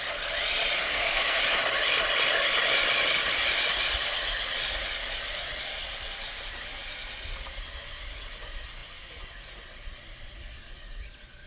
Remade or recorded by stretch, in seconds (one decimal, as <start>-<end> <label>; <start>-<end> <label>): 0.0-0.8 recorded; 0.8-1.4 remade; 1.4-11.5 recorded